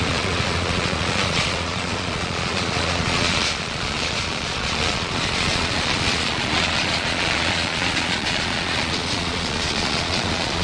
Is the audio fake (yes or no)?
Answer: yes